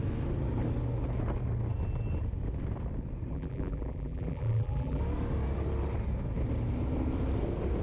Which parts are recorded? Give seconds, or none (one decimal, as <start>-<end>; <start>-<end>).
0.0-3.3; 5.0-7.8